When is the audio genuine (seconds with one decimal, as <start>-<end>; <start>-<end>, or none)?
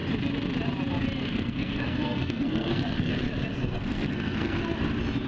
0.0-1.2; 3.1-3.5; 4.6-5.3